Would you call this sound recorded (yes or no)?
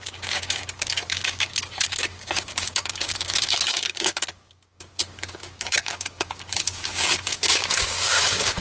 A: no